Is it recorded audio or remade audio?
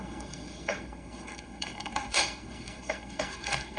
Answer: remade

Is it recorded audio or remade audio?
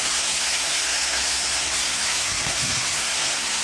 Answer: remade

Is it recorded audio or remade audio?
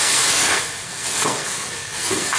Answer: remade